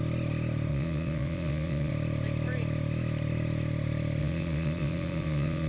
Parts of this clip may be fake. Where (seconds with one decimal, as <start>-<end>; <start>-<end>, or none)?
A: 0.7-1.9; 4.2-5.7

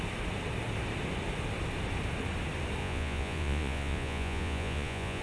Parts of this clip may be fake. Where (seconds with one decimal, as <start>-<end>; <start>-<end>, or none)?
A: 2.8-5.2

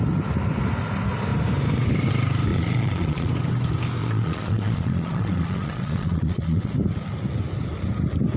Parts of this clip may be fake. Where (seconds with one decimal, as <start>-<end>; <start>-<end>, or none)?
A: 2.5-3.3; 4.0-6.7

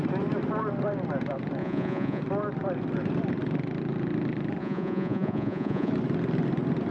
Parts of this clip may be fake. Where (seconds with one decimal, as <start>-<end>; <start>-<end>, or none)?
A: 1.6-2.2; 4.6-5.9

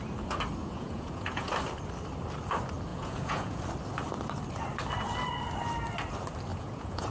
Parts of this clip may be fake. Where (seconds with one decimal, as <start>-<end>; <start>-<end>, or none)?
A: 0.6-1.5; 2.9-3.6; 6.5-7.1

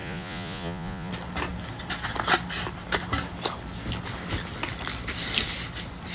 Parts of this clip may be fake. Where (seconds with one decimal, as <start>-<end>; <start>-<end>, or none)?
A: 0.0-1.1

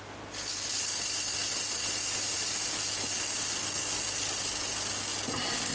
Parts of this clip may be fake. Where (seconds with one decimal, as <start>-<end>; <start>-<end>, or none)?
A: none

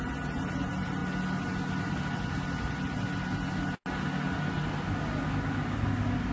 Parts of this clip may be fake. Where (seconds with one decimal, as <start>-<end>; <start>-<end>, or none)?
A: none